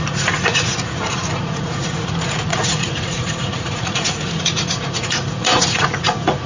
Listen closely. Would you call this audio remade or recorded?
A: remade